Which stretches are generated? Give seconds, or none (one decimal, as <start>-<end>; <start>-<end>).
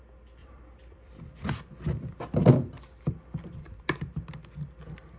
0.4-2.4